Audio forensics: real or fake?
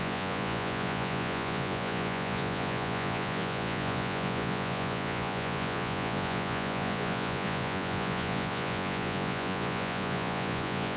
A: fake